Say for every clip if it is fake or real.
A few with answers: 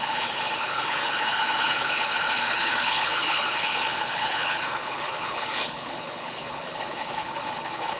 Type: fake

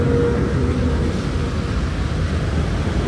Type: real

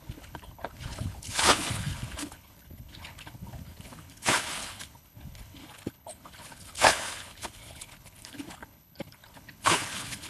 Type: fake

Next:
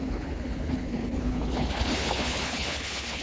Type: fake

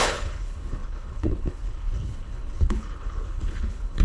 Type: fake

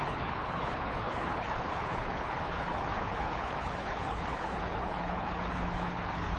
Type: fake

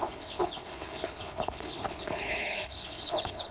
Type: fake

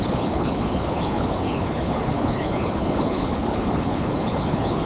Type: fake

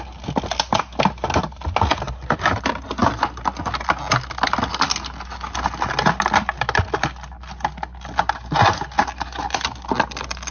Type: real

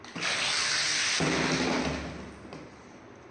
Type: real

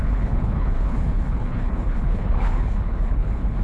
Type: fake